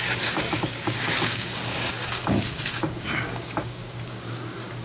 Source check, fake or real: fake